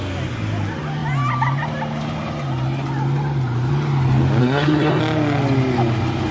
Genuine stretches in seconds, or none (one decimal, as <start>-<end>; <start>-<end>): 0.0-4.4; 5.0-6.3

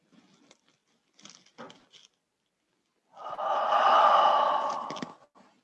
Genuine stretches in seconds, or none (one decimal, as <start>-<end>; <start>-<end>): 0.0-5.6